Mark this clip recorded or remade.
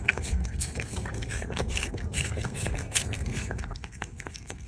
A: remade